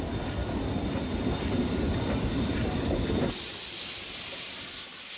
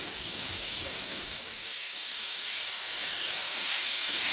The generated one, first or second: second